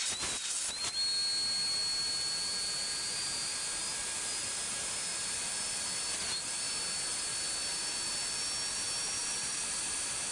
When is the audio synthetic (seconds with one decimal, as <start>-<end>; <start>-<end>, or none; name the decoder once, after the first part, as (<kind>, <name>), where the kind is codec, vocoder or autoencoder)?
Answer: none